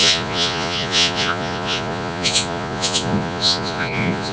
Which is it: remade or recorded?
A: remade